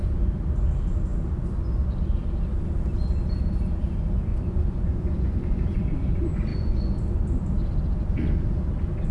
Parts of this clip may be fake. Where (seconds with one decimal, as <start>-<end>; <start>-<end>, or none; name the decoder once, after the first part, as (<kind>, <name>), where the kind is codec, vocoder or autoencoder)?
4.3-5.8 (vocoder, Vocos); 6.5-7.0